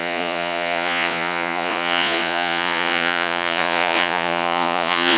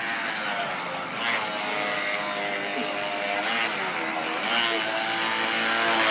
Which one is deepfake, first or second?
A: first